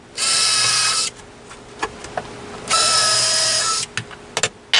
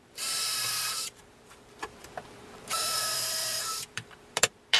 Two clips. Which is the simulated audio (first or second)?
second